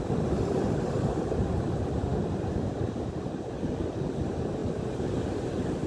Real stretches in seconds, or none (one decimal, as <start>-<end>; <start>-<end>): 0.0-5.9

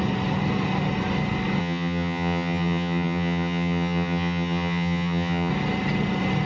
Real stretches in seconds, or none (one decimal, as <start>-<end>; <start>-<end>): 0.0-1.6; 5.5-6.5

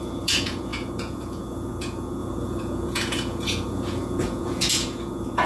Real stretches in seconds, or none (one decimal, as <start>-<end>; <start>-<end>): none

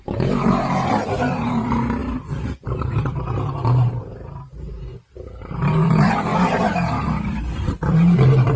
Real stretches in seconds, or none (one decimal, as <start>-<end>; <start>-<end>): 6.3-7.0